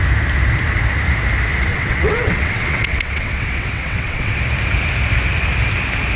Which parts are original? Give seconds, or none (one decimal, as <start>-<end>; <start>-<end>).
0.0-1.7; 4.4-6.2